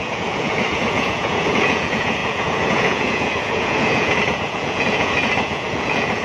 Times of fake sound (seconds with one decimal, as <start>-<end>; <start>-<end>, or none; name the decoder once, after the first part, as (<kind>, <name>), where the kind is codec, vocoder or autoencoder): 0.0-6.2 (vocoder, Vocos)